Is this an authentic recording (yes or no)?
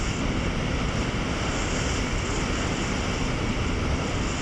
yes